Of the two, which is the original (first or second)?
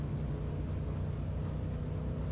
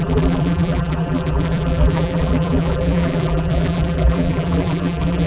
first